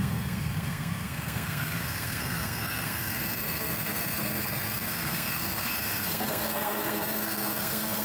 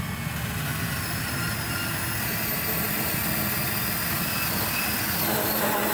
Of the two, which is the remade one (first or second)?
first